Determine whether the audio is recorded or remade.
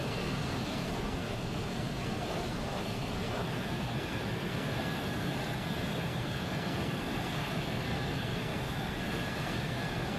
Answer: remade